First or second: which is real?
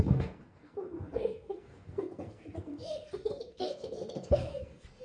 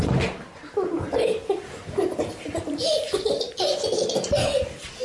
second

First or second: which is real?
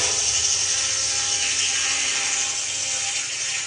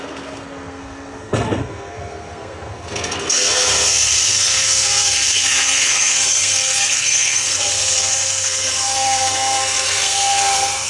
first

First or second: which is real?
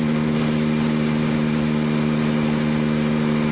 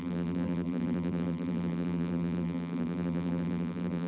first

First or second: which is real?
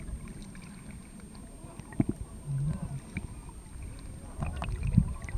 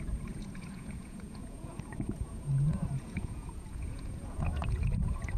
first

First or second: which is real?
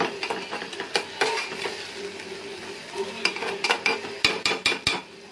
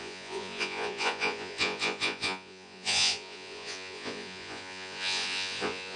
first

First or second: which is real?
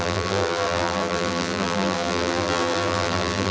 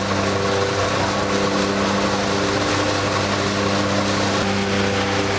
second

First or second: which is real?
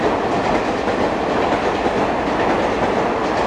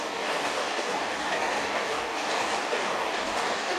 first